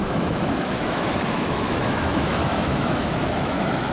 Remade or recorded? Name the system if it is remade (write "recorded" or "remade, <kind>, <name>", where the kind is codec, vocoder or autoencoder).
remade, autoencoder, DAC-VAE